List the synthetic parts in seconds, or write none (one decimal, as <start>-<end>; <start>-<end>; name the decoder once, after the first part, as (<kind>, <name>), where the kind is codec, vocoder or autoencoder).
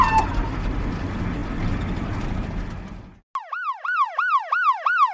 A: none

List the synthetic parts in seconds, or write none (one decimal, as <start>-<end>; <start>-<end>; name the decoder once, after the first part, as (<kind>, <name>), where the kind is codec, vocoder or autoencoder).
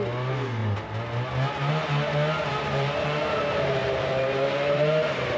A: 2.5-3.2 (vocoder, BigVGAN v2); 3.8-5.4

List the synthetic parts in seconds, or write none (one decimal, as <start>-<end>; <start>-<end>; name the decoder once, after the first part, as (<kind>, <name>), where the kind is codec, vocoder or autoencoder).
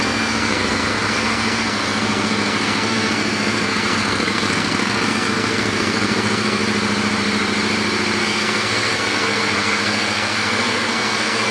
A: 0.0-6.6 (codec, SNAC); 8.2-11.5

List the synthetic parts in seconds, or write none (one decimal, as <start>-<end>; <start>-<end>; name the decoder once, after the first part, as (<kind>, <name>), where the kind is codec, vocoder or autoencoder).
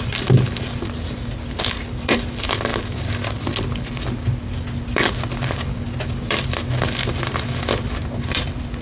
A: 0.0-2.7 (vocoder, BigVGAN v2); 3.6-8.8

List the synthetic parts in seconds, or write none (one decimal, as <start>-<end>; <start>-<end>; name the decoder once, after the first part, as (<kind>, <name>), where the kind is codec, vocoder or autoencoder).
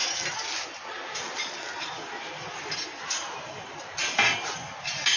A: none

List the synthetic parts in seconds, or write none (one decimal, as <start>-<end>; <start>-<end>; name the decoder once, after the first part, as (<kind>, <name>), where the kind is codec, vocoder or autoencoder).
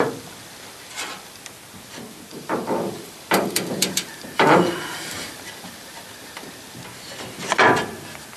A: 2.3-6.4 (vocoder, BigVGAN v2)